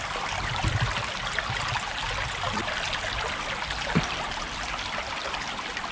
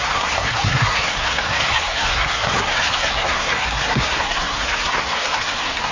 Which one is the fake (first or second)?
second